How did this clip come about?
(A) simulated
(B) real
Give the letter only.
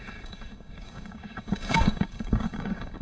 A